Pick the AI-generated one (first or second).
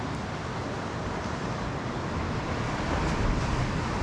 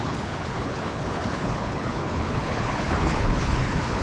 second